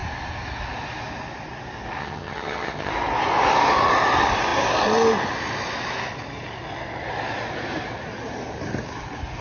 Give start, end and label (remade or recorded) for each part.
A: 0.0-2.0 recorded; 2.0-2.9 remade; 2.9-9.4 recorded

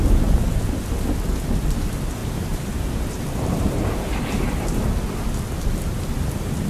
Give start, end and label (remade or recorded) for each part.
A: 0.0-2.2 recorded; 2.2-4.8 remade; 4.8-6.7 recorded

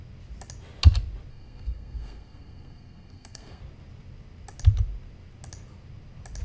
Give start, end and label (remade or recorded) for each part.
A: 0.0-1.3 recorded; 1.3-3.6 remade; 3.6-6.4 recorded

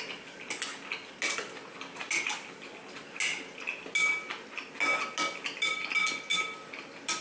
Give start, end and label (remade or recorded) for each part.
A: 0.0-7.2 recorded

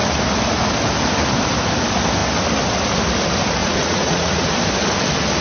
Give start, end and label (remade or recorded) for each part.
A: 0.0-3.6 recorded; 3.6-4.5 remade; 4.5-5.4 recorded

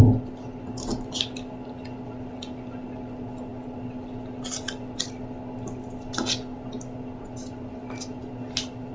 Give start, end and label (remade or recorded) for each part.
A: 0.0-8.9 recorded

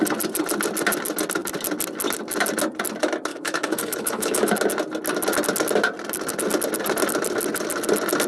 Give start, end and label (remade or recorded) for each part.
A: 0.0-3.3 recorded; 3.3-4.5 remade; 4.5-8.3 recorded